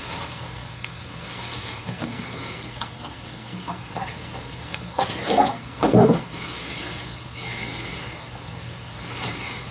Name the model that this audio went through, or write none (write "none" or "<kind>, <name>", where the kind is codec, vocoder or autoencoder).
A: codec, SNAC